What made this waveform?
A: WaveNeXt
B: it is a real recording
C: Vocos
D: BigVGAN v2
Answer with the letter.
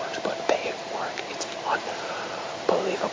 D